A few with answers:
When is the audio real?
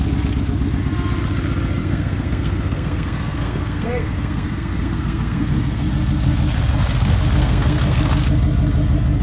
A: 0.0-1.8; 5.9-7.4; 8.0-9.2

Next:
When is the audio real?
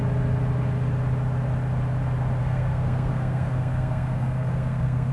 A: 0.0-2.4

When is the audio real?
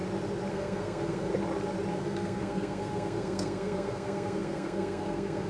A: 0.0-0.5; 1.3-1.9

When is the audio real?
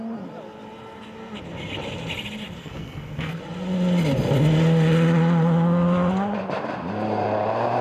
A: 0.0-2.6; 3.4-7.8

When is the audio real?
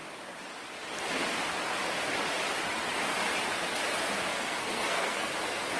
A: 0.0-4.3; 5.3-5.8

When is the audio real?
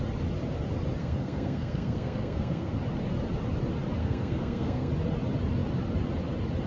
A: 0.0-1.0; 2.7-4.0; 4.9-6.7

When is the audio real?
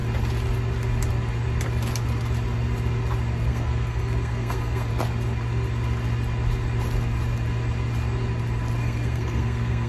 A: 0.0-3.5; 4.9-8.8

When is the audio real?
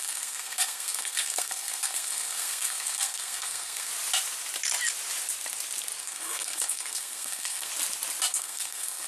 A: 3.9-6.0; 7.7-8.3